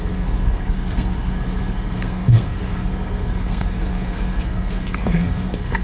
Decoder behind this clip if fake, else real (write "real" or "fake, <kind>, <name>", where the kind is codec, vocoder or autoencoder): fake, codec, SNAC